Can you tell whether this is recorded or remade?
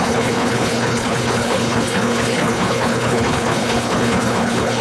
remade